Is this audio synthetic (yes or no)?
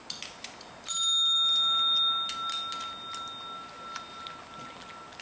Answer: no